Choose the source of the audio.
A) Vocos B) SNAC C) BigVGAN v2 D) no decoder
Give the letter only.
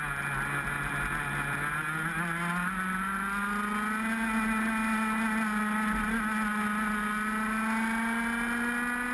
D